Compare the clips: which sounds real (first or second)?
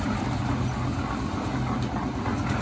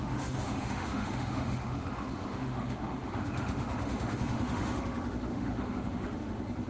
first